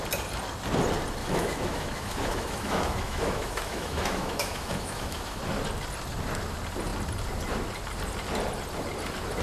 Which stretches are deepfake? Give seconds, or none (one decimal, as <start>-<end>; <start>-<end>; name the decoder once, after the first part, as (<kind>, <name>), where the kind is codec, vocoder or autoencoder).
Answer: 1.2-5.4 (autoencoder, DAC-VAE)